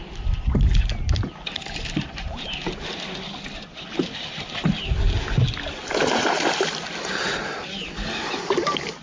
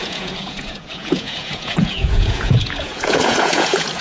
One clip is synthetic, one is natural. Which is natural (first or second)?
first